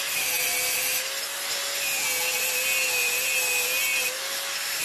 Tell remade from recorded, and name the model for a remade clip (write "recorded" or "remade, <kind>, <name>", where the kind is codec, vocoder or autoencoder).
recorded